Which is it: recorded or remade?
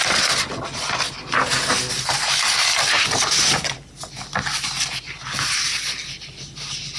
recorded